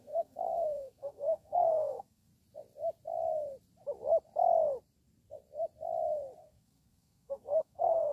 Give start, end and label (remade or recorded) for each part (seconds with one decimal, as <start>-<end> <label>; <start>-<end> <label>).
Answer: 0.0-2.3 remade; 2.3-6.4 recorded; 6.4-8.1 remade